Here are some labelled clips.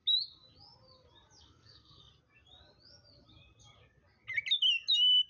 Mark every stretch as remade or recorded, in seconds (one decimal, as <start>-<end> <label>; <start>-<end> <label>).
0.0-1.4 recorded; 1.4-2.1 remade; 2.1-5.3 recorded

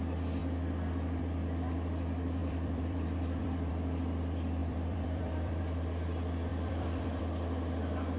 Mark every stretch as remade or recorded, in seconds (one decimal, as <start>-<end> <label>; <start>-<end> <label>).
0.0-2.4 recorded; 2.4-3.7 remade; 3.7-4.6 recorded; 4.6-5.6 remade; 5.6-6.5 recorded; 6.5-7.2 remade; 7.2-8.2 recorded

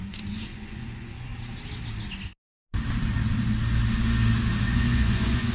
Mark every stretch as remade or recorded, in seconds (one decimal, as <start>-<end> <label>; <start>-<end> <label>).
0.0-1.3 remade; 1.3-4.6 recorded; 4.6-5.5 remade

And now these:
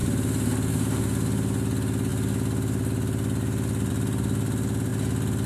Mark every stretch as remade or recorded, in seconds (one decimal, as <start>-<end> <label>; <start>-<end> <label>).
0.0-5.5 recorded

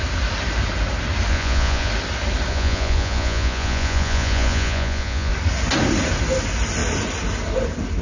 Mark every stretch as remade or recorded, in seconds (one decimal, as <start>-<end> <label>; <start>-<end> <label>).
0.0-1.3 recorded; 1.3-1.9 remade; 1.9-2.5 recorded; 2.5-5.3 remade; 5.3-8.0 recorded

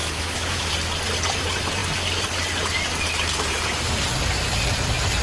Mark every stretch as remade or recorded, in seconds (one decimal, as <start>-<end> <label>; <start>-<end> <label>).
0.0-0.7 remade; 0.7-5.2 recorded

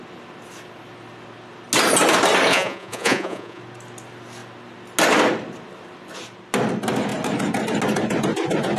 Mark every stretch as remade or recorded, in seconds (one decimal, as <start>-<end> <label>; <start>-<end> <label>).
0.0-2.5 recorded; 2.5-3.6 remade; 3.6-8.8 recorded